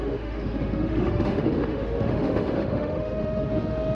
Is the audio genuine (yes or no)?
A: no